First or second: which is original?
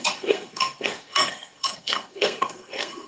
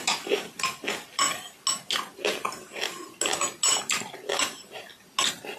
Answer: second